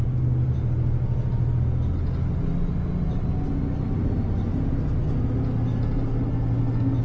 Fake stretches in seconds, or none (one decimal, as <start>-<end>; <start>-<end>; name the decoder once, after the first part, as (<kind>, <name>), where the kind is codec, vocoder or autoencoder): none